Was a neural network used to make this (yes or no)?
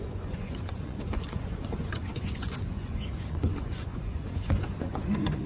yes